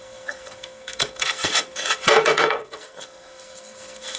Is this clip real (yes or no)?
no